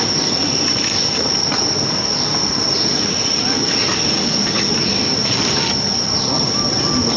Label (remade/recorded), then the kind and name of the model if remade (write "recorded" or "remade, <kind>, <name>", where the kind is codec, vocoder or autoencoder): recorded